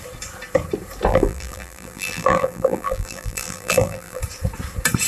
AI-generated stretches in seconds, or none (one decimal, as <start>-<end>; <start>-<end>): 1.1-4.2